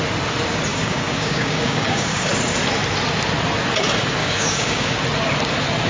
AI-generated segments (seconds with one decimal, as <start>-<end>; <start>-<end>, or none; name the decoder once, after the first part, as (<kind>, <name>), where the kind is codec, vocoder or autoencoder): 0.7-2.3 (codec, DAC); 4.2-4.9